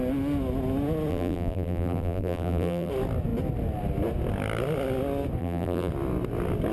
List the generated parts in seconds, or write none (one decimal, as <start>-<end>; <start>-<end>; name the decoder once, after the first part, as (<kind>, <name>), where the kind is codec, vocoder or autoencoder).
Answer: 1.1-2.9 (vocoder, BigVGAN v2); 5.4-5.9